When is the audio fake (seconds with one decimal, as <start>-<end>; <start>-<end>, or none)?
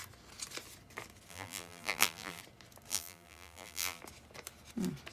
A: 1.3-2.4; 2.9-4.0